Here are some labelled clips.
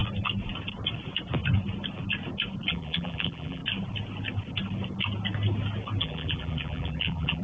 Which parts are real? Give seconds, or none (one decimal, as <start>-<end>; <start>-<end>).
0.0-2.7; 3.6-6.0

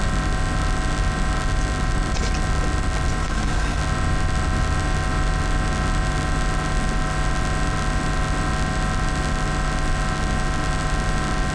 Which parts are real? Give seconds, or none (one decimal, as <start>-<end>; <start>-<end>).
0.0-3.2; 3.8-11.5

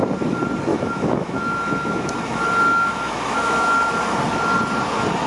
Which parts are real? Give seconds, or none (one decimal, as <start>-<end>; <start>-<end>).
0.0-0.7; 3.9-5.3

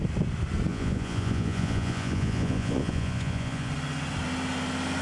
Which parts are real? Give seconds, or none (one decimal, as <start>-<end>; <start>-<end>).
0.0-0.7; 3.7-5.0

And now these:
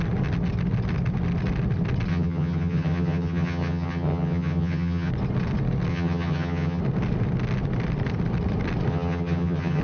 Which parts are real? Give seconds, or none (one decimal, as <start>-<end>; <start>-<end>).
0.0-2.1; 5.1-5.9; 6.8-8.9

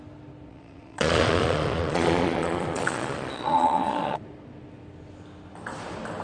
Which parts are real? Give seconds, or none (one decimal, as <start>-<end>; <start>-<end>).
0.0-0.5; 4.2-6.2